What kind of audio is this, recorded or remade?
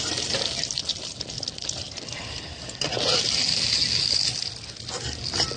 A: recorded